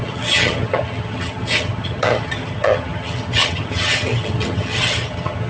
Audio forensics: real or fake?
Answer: fake